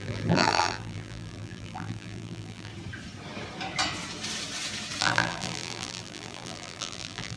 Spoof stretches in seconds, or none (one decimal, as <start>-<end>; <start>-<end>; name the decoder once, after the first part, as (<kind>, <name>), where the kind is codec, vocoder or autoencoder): 0.0-2.7 (vocoder, BigVGAN v2); 5.0-7.4